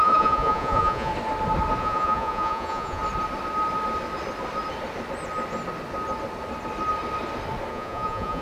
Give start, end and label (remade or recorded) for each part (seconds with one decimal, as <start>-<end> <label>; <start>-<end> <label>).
0.0-1.1 remade; 1.1-1.8 recorded; 1.8-3.0 remade; 3.0-7.7 recorded; 7.7-8.4 remade